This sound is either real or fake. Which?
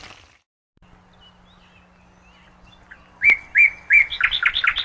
real